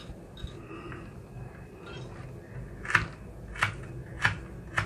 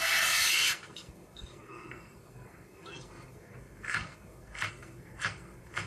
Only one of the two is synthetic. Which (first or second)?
second